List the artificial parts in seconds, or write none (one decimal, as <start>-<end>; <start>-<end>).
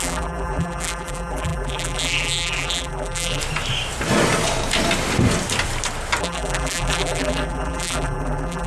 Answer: 0.0-3.4; 6.2-8.7